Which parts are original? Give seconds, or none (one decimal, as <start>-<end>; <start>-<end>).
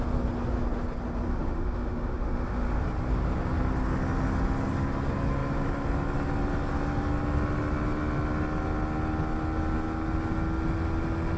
0.0-1.3; 2.8-11.4